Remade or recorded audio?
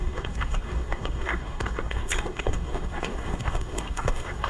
remade